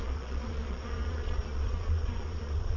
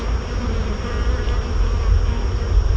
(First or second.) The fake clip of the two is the first